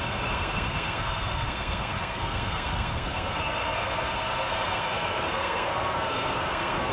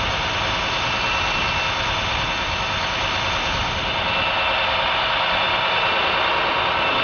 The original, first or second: second